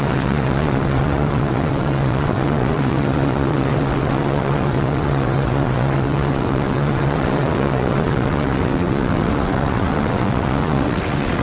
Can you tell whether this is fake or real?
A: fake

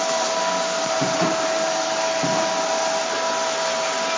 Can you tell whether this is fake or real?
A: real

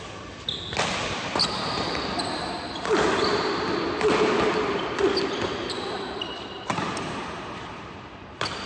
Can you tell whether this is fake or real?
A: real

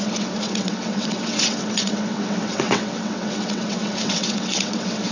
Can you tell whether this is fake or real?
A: fake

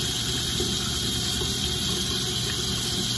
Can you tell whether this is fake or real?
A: real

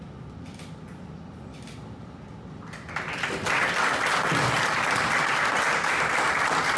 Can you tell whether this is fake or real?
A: real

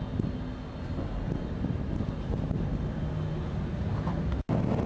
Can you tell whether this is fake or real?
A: real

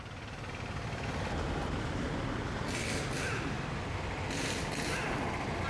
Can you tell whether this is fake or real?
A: real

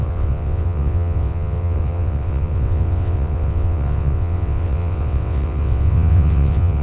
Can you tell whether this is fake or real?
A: fake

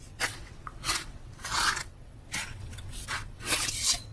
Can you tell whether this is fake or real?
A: fake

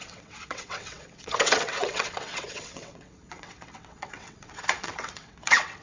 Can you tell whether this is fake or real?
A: fake